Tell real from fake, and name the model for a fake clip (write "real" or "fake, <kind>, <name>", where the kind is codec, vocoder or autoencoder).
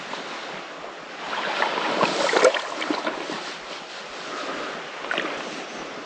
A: real